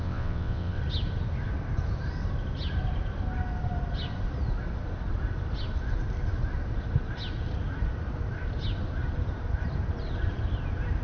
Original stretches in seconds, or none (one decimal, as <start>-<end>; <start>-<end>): 0.8-11.0